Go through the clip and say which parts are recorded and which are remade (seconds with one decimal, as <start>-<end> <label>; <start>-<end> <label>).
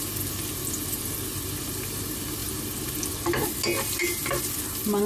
0.0-5.1 recorded